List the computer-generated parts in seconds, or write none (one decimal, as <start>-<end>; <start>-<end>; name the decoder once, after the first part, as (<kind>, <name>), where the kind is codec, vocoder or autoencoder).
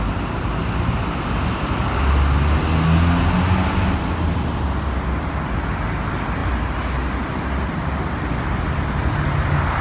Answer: none